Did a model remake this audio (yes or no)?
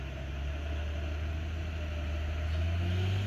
no